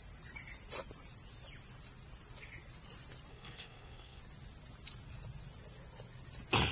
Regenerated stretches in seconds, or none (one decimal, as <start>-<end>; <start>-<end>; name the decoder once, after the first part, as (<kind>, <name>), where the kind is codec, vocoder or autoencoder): 3.3-4.2 (codec, SNAC)